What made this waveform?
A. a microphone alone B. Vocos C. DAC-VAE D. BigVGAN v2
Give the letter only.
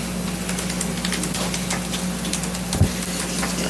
A